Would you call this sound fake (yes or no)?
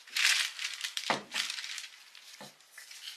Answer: no